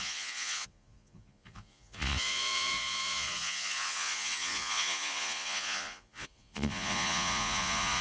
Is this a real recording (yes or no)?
no